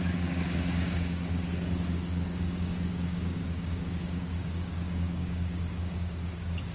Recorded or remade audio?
remade